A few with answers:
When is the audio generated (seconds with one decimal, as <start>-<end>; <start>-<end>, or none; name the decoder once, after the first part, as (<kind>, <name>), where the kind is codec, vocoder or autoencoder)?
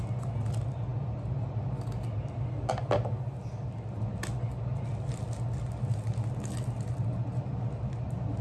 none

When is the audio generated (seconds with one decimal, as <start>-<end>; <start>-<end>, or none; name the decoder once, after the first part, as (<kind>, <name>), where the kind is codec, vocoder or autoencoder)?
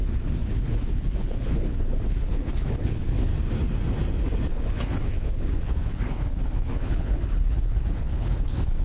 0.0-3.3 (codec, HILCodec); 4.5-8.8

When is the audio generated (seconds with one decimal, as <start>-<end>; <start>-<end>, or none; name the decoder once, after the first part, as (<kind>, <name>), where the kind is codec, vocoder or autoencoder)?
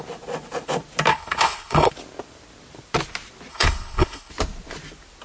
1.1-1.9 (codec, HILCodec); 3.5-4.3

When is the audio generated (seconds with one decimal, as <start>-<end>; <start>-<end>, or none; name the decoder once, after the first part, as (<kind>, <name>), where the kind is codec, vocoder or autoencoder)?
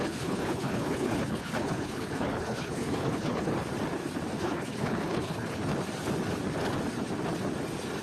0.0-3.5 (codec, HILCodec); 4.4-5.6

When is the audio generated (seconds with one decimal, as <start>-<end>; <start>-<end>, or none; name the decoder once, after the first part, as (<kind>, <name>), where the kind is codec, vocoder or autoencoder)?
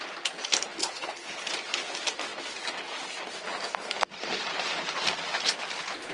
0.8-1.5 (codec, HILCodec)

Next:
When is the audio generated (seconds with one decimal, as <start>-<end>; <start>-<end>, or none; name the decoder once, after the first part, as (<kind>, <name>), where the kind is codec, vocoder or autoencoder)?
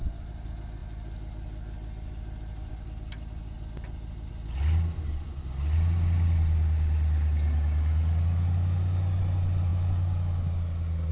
none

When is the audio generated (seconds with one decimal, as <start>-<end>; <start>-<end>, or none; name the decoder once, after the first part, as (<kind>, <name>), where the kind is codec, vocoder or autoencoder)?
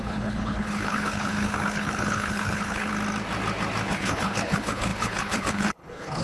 0.0-2.9 (codec, HILCodec); 3.9-6.2